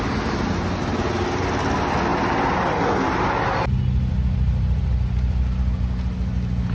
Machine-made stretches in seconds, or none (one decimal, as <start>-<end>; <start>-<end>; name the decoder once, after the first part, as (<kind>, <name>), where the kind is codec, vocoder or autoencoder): none